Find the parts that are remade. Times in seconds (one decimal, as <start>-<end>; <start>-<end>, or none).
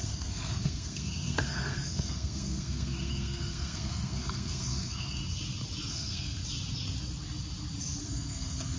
0.0-5.2; 5.9-6.4; 8.0-8.8